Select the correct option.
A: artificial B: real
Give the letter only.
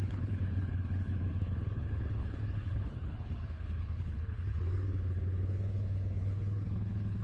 A